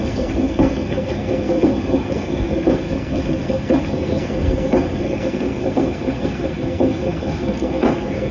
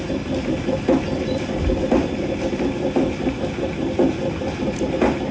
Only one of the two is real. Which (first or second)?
second